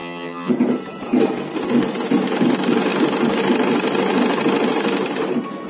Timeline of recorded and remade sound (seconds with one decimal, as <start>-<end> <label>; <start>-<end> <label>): 0.0-0.5 remade; 0.5-5.7 recorded